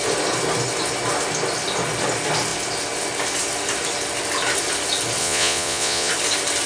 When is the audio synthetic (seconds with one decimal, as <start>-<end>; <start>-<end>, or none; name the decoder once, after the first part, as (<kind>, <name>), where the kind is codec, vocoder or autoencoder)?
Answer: 5.2-6.1 (vocoder, Vocos)